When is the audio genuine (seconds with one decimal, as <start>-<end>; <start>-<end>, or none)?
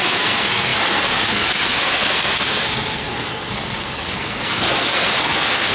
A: none